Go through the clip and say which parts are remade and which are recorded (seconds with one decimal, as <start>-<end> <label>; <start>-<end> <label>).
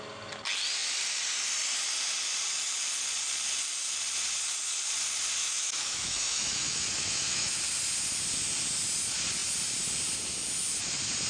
0.0-5.4 recorded; 5.4-7.6 remade; 7.6-11.3 recorded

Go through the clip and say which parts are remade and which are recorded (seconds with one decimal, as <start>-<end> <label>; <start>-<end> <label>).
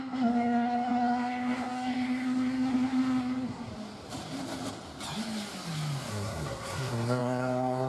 0.0-3.7 remade; 3.7-6.1 recorded; 6.1-7.9 remade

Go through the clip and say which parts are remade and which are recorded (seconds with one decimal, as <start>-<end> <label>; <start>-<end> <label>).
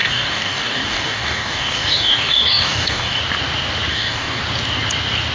0.0-3.2 remade; 3.2-3.9 recorded; 3.9-4.4 remade; 4.4-5.3 recorded